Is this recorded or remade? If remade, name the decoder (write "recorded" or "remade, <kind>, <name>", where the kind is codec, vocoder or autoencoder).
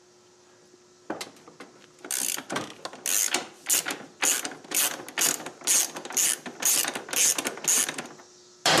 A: recorded